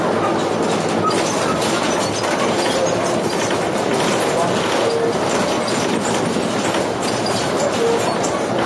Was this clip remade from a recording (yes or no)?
no